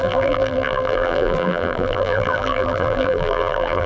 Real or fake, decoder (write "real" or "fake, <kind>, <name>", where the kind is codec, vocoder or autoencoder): fake, vocoder, BigVGAN v2